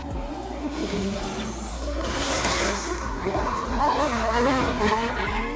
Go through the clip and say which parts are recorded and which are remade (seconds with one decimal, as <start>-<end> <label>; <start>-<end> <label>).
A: 0.0-0.6 recorded; 0.6-1.2 remade; 1.2-1.7 recorded; 1.7-5.1 remade; 5.1-5.6 recorded